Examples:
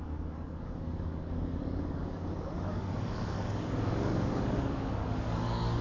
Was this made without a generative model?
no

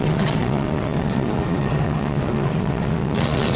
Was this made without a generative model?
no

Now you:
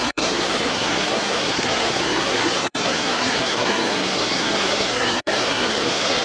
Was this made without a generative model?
no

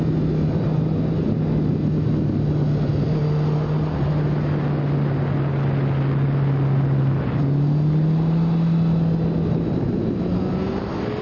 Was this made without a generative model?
yes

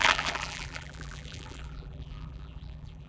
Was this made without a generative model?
no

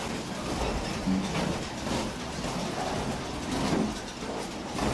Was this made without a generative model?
yes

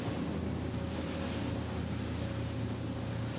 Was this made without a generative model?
yes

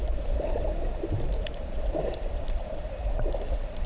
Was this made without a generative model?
no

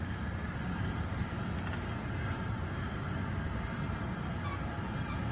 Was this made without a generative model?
yes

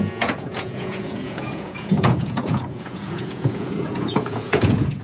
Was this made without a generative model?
no